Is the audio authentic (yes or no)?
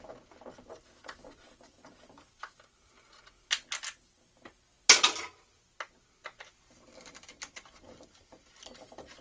yes